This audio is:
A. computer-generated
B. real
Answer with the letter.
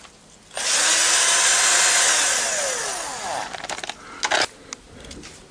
B